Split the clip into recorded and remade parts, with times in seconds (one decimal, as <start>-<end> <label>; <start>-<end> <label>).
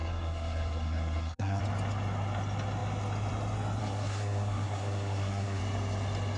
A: 0.0-1.6 remade; 1.6-3.8 recorded; 3.8-5.6 remade; 5.6-6.4 recorded